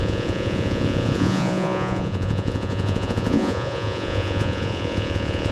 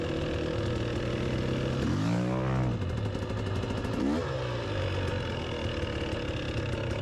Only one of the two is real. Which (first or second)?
second